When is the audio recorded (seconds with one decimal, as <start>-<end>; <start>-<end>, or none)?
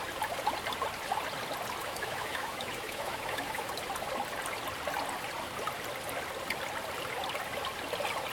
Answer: 0.0-1.8; 3.7-8.3